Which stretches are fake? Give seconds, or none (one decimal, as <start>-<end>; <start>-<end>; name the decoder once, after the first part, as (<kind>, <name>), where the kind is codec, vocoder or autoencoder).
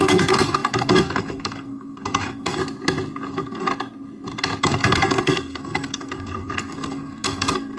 0.0-2.6 (codec, SNAC); 3.3-3.7; 4.6-7.8